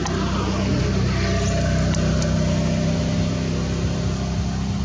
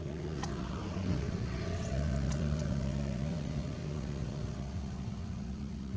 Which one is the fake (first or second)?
second